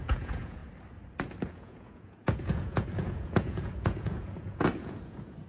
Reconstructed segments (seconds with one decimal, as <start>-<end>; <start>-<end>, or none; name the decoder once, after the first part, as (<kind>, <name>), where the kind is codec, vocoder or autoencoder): 0.0-0.6 (vocoder, Vocos); 1.5-5.5